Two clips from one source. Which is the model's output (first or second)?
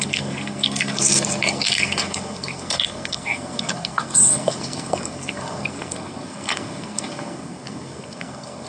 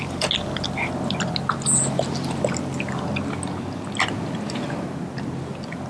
first